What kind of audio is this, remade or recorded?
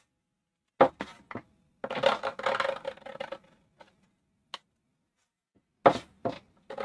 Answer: recorded